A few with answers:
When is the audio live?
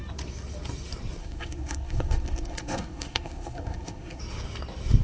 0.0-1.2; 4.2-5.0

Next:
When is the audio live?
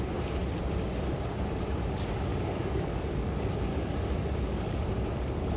0.0-2.3; 3.3-3.7; 4.7-5.6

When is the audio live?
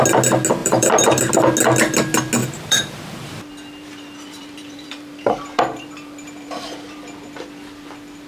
0.0-0.6; 1.3-2.4; 7.0-8.3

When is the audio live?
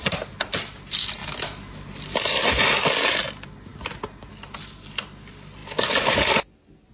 0.0-6.9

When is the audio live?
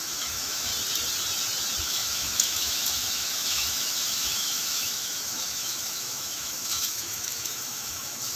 0.7-1.8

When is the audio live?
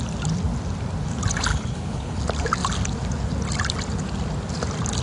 0.0-1.5; 2.2-5.0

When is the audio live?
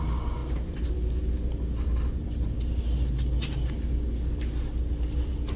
0.0-5.6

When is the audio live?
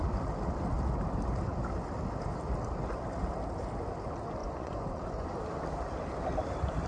0.0-4.4; 5.3-6.9